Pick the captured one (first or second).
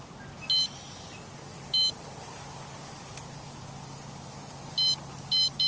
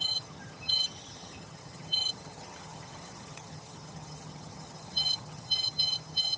first